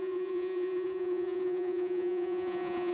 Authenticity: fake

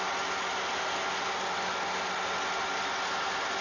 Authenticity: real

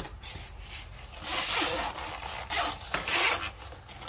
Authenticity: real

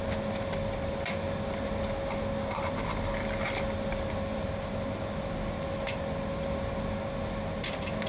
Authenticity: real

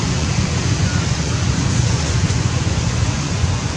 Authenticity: fake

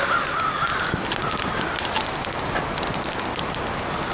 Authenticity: real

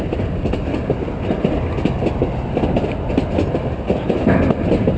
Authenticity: real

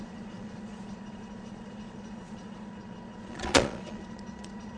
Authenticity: fake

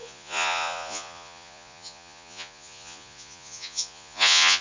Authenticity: fake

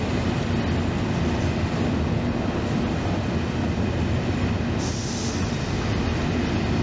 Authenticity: real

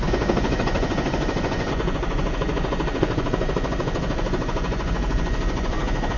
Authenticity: fake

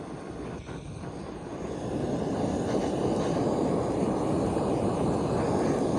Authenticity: real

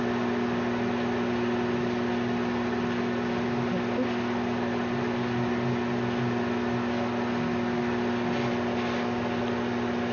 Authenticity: real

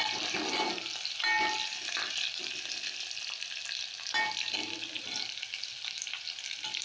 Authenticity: real